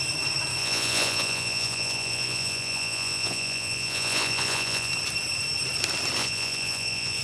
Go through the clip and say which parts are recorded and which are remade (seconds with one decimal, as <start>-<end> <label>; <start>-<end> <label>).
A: 0.0-0.6 recorded; 0.6-4.9 remade; 4.9-6.2 recorded; 6.2-7.2 remade